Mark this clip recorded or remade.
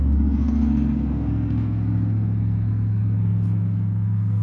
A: remade